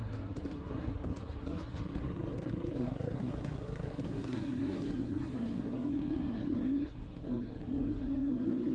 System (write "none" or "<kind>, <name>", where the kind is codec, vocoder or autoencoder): codec, SNAC